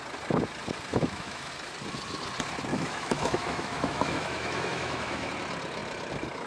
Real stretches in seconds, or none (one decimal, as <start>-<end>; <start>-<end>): 0.0-0.9; 1.5-2.7; 5.3-6.5